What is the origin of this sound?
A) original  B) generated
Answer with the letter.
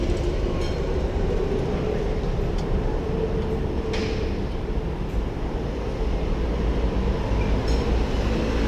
A